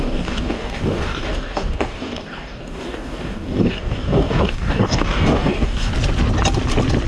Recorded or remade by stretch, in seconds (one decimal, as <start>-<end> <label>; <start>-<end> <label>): 0.0-5.9 remade; 5.9-7.1 recorded

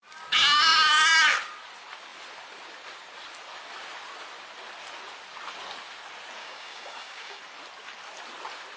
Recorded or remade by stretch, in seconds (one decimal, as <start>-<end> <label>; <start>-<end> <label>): 0.0-6.4 recorded; 6.4-7.4 remade; 7.4-8.8 recorded

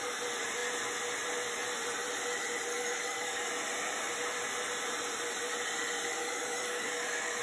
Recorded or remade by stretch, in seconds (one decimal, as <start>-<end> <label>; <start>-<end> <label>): 0.0-2.7 recorded; 2.7-3.5 remade; 3.5-6.2 recorded; 6.2-7.4 remade

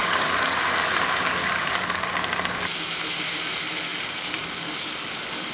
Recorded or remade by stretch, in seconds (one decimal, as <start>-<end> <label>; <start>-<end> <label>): 0.0-0.6 remade; 0.6-1.4 recorded; 1.4-2.1 remade; 2.1-3.9 recorded; 3.9-5.5 remade

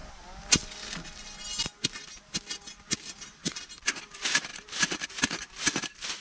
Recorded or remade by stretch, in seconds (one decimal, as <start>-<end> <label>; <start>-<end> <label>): 0.0-6.2 recorded